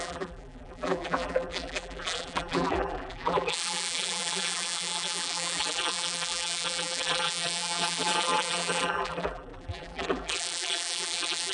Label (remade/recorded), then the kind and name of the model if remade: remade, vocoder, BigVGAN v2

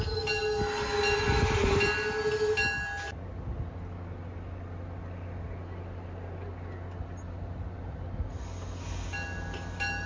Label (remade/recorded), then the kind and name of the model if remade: recorded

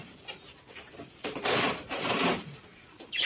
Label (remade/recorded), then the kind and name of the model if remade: remade, vocoder, BigVGAN v2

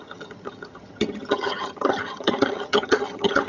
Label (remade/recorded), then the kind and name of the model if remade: remade, vocoder, HiFi-GAN